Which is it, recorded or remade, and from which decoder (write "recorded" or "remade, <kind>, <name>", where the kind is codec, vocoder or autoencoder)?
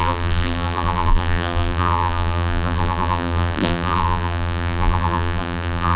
remade, vocoder, BigVGAN v2